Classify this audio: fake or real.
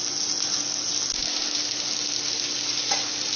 real